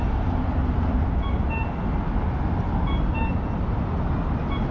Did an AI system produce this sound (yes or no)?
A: no